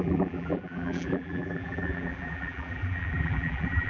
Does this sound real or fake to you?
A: fake